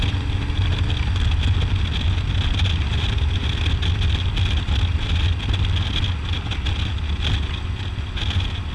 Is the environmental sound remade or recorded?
recorded